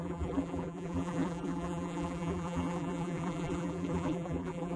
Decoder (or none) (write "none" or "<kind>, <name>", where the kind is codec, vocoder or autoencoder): vocoder, BigVGAN v2